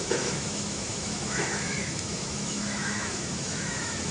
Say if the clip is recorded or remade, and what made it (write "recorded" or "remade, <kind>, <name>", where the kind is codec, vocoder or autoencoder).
remade, autoencoder, DAC-VAE